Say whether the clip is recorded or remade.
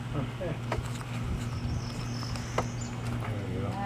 recorded